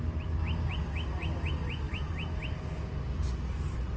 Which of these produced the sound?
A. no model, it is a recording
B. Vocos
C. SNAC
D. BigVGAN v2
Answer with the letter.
A